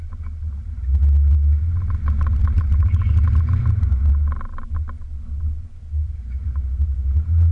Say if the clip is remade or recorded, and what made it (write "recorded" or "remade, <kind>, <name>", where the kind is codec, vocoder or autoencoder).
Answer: recorded